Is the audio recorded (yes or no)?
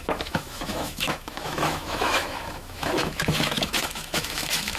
no